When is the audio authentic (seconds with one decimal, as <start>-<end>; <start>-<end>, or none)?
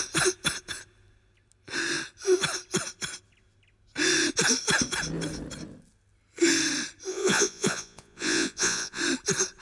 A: 0.0-7.1; 9.0-9.6